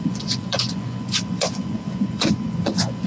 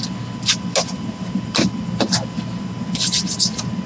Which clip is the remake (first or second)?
first